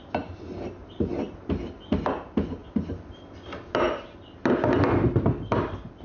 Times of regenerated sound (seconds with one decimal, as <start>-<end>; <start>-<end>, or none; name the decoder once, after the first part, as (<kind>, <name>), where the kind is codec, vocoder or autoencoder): 0.8-1.5 (vocoder, BigVGAN v2)